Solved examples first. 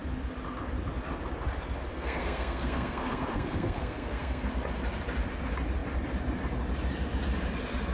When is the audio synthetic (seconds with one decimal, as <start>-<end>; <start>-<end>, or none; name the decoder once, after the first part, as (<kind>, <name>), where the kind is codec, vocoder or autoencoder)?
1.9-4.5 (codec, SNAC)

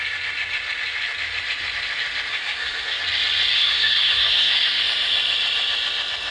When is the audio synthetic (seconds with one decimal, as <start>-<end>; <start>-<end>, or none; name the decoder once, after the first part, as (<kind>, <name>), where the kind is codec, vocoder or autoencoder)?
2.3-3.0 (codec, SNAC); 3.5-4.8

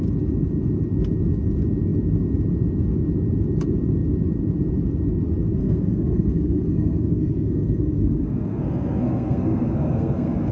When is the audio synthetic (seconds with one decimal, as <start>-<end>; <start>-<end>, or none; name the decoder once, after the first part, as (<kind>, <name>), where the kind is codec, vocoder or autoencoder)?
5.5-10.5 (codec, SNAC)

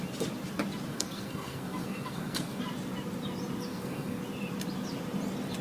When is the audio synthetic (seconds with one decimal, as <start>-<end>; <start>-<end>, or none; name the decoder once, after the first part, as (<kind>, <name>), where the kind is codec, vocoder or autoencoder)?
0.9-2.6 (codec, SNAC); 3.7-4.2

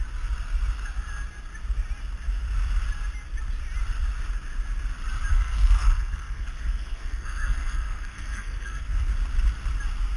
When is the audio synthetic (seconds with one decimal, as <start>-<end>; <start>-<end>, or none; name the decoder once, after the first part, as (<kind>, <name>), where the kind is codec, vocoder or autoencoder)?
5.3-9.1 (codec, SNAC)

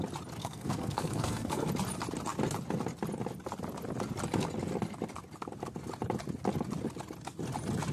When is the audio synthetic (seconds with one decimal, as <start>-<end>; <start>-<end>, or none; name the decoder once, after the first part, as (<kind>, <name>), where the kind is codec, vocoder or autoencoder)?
0.4-1.7 (codec, SNAC)

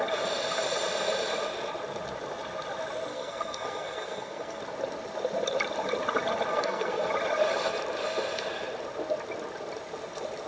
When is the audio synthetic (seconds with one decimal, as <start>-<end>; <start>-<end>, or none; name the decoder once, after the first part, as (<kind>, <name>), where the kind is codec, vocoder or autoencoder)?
3.1-4.6 (codec, SNAC); 6.5-7.1